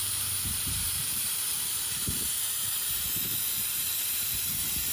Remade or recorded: remade